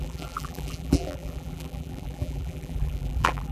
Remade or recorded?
remade